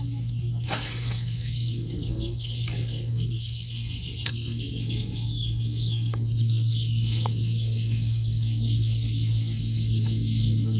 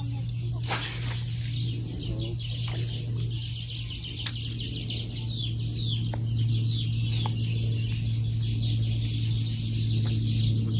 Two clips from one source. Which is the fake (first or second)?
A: first